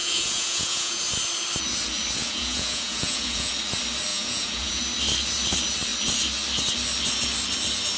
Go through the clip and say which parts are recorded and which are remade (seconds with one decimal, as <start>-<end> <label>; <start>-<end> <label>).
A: 0.0-1.0 remade; 1.0-2.2 recorded; 2.2-3.5 remade; 3.5-4.1 recorded; 4.1-4.8 remade; 4.8-8.0 recorded